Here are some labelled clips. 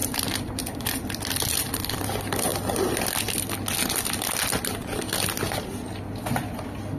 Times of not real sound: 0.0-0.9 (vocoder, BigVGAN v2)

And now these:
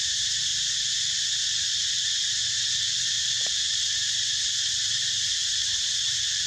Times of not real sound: 0.0-0.5 (vocoder, BigVGAN v2); 2.9-6.5

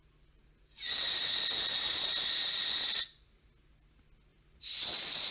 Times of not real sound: 4.3-5.3 (vocoder, BigVGAN v2)

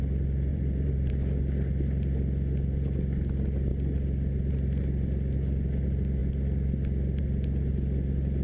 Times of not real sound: 0.5-1.1 (vocoder, BigVGAN v2)

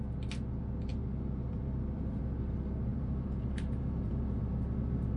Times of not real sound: 0.9-2.2 (vocoder, BigVGAN v2); 2.9-4.4

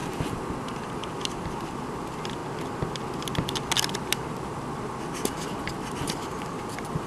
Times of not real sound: 0.0-2.4 (vocoder, BigVGAN v2); 3.9-7.1